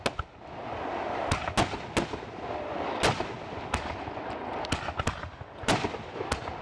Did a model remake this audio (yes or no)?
no